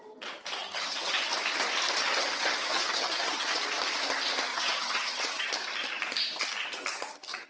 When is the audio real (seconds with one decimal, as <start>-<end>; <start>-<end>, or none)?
0.0-0.6; 1.3-2.0; 3.6-4.5; 5.5-7.5